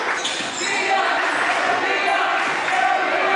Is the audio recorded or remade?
remade